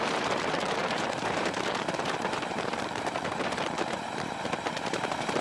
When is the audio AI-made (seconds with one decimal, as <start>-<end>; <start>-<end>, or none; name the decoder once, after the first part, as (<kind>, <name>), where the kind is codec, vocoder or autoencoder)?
0.0-5.4 (vocoder, BigVGAN v2)